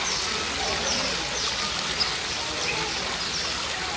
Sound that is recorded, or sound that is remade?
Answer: recorded